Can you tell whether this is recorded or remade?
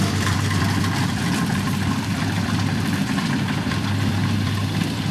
remade